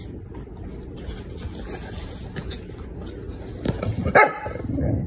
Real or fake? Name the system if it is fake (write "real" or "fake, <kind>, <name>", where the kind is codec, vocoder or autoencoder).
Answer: real